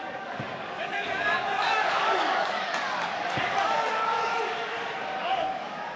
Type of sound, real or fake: fake